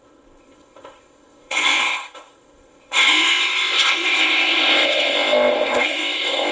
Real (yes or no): no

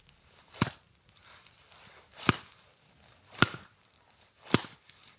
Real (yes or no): yes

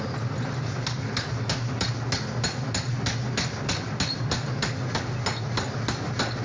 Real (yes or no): yes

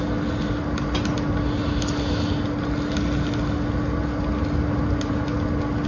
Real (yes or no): yes